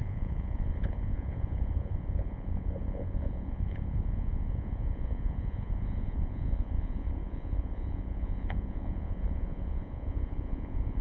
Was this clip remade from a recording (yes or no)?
yes